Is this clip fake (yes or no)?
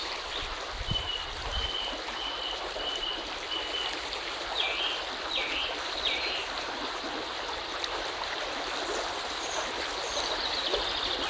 no